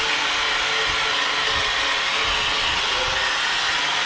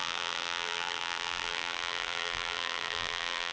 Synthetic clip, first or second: second